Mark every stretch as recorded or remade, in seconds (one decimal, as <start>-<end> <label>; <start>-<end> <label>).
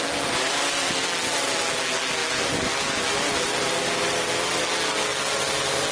0.0-5.9 recorded